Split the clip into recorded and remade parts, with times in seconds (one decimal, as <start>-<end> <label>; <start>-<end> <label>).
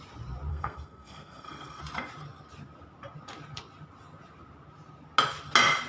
0.0-0.5 recorded; 0.5-1.8 remade; 1.8-5.9 recorded